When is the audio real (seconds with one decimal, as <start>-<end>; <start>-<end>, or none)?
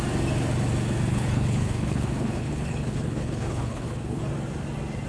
0.0-1.1; 4.2-5.1